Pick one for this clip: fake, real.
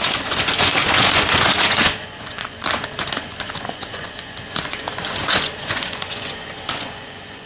fake